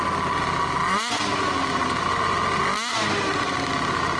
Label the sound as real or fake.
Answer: real